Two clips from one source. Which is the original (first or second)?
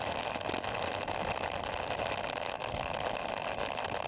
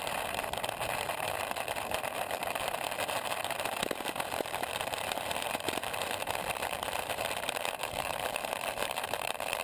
first